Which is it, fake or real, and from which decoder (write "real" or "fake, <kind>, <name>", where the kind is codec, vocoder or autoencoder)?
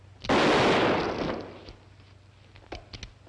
real